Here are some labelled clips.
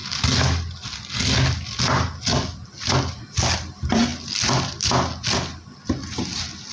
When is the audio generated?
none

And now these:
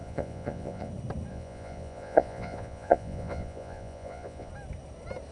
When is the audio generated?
0.0-0.9 (vocoder, Vocos); 1.3-4.5

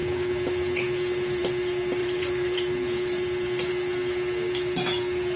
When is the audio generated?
2.0-3.7 (vocoder, BigVGAN v2)

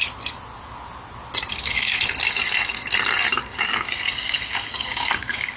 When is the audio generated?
1.5-2.1 (codec, DAC); 3.4-5.6

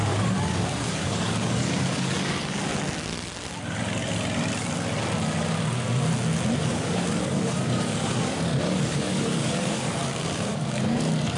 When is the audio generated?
0.0-2.7 (codec, DAC); 6.7-11.4

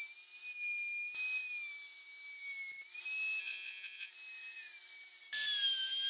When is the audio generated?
3.4-4.1 (vocoder, Vocos)

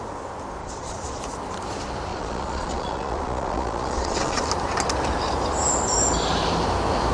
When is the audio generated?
0.6-1.2 (vocoder, Vocos); 2.1-4.4